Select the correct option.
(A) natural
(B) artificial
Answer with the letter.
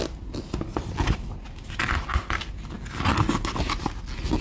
A